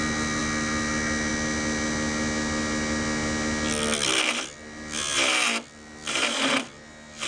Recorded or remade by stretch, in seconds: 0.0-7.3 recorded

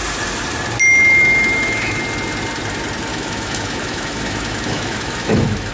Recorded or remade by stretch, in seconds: 0.0-1.2 recorded; 1.2-2.0 remade; 2.0-3.1 recorded; 3.1-5.7 remade

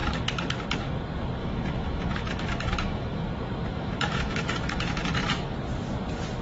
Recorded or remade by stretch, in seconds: 0.0-1.4 recorded; 1.4-3.3 remade; 3.3-3.7 recorded; 3.7-5.4 remade; 5.4-6.4 recorded

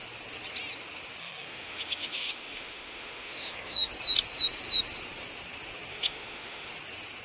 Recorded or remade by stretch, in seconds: 0.0-1.2 recorded; 1.2-3.9 remade; 3.9-5.9 recorded; 5.9-6.7 remade; 6.7-7.2 recorded